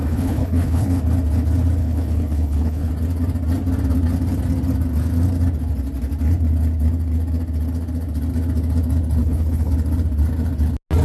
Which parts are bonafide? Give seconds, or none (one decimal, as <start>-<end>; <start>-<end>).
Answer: 1.0-1.8; 2.9-9.2; 9.7-11.0